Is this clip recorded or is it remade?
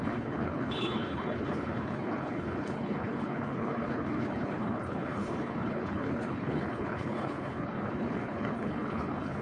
remade